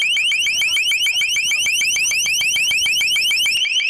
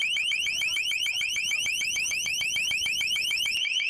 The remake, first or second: second